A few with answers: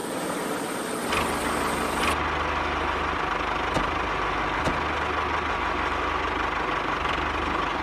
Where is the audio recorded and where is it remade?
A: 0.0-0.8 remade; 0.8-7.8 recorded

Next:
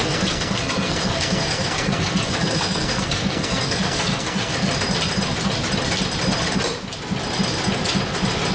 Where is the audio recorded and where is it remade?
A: 0.0-4.7 remade; 4.7-8.5 recorded

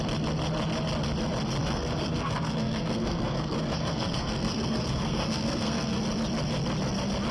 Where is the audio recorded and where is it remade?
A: 0.0-1.6 recorded; 1.6-6.0 remade; 6.0-7.3 recorded

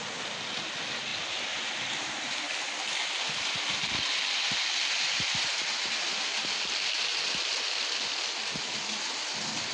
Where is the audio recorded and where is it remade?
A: 0.0-9.7 recorded

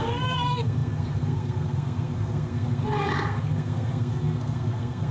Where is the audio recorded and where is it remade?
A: 0.0-5.1 remade